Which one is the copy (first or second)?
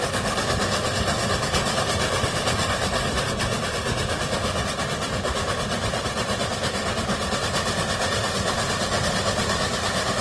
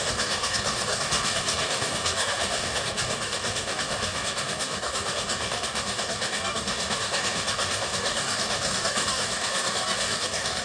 second